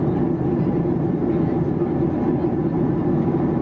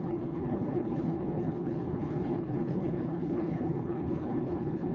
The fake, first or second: second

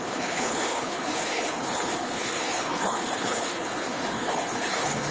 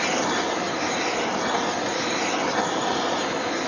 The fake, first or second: first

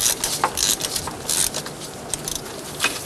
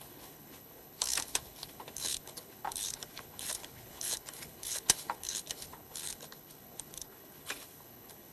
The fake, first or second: second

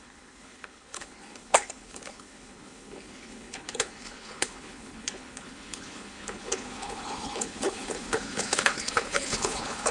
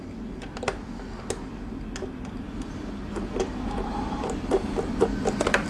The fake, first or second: first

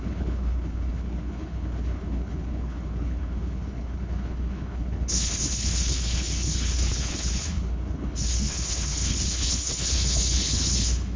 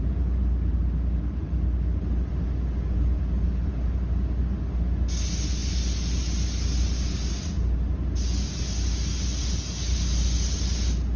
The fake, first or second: first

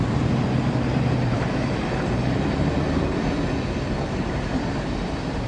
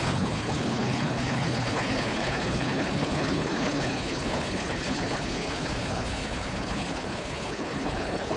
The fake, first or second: second